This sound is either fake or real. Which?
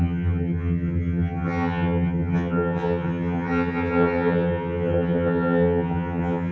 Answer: fake